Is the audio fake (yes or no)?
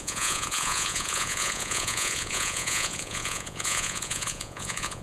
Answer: yes